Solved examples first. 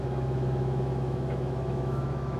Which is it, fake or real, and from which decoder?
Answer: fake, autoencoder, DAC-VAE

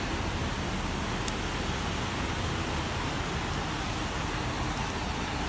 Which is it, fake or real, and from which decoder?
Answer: real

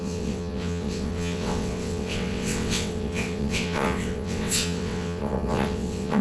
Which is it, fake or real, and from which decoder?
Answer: fake, vocoder, WaveNeXt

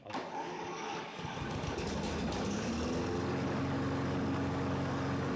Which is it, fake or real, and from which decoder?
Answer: fake, codec, DAC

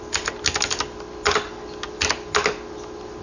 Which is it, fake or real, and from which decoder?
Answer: real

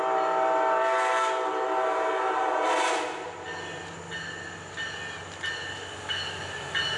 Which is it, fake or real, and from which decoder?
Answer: real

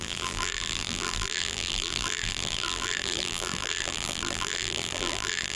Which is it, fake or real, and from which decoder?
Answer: fake, vocoder, BigVGAN v2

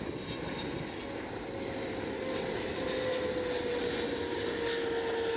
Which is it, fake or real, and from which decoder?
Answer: real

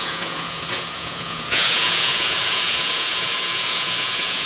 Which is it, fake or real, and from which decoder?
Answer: fake, vocoder, Vocos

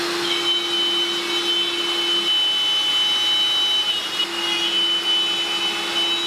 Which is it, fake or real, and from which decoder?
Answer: real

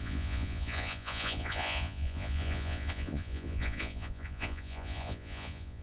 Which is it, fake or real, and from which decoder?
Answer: fake, vocoder, Vocos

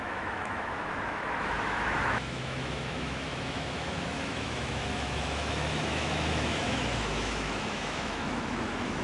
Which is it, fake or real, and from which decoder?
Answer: fake, autoencoder, DAC-VAE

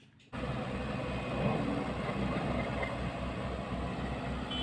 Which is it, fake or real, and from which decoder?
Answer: real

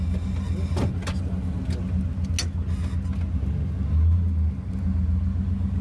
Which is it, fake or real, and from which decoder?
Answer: real